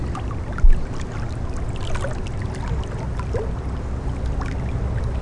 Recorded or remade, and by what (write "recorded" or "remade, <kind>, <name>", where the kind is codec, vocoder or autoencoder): recorded